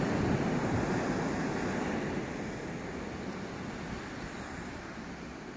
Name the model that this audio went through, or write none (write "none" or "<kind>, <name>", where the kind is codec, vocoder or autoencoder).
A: none